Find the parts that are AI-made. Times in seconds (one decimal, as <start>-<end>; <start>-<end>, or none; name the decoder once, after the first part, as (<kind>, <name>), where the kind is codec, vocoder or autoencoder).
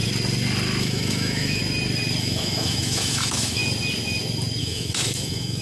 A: 0.8-1.6 (autoencoder, DAC-VAE); 2.2-3.6; 4.6-5.6